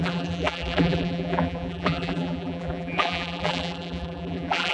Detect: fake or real fake